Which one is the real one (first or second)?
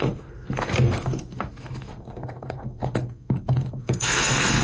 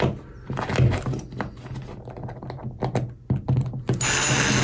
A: second